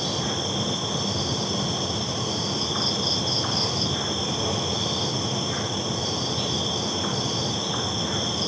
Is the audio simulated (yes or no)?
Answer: no